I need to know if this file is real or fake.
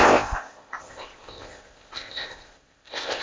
fake